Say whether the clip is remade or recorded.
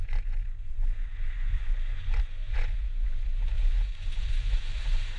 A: remade